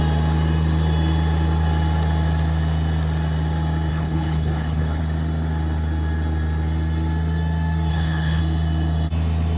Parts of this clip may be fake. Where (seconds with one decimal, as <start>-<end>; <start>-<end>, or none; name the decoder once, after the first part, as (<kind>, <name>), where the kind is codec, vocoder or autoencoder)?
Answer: 3.9-5.0 (codec, HILCodec); 7.9-8.4